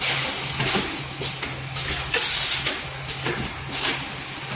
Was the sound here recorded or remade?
recorded